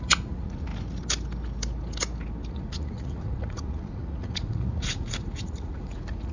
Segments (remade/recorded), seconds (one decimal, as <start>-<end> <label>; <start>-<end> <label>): 0.0-0.7 remade; 0.7-2.5 recorded; 2.5-6.3 remade